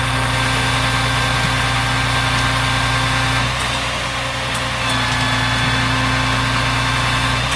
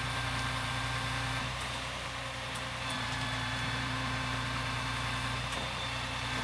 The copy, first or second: second